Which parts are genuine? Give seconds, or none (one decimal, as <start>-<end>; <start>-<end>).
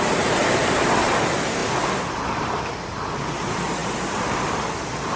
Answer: 0.0-5.2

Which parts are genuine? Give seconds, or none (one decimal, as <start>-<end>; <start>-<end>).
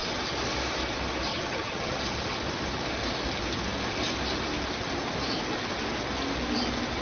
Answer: 0.0-1.3; 1.9-7.0